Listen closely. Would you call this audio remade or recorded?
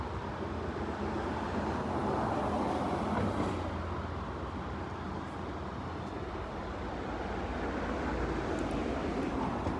recorded